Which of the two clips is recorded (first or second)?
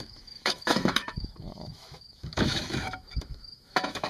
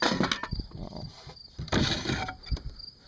second